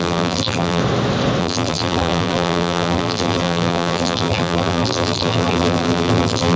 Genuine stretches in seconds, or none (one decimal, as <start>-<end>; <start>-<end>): 0.8-1.4